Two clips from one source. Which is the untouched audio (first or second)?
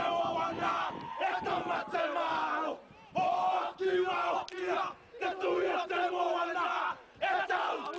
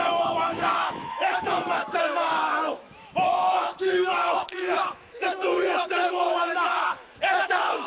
first